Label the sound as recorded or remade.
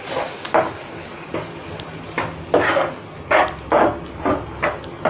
recorded